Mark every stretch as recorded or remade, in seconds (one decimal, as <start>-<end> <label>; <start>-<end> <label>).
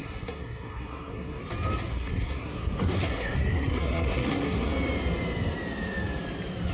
0.0-1.4 remade; 1.4-1.9 recorded; 1.9-4.7 remade; 4.7-6.7 recorded